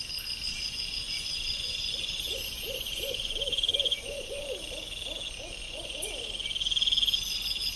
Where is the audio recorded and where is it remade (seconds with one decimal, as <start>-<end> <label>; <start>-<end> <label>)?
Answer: 0.0-0.5 recorded; 0.5-4.4 remade; 4.4-5.6 recorded; 5.6-6.1 remade; 6.1-7.8 recorded